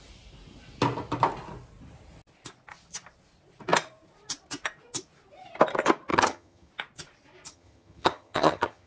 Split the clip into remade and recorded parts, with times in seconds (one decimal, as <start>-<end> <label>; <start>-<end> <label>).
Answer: 0.0-6.1 recorded; 6.1-6.7 remade; 6.7-7.5 recorded; 7.5-8.9 remade